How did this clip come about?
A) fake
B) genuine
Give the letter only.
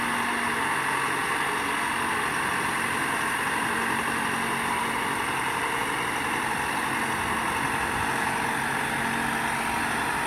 B